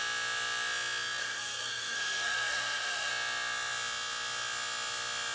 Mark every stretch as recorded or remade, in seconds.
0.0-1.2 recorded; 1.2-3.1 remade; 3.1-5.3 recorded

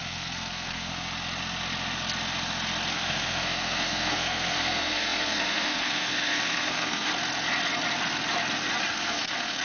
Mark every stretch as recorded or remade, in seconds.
0.0-0.9 remade; 0.9-2.9 recorded; 2.9-7.1 remade; 7.1-8.9 recorded; 8.9-9.6 remade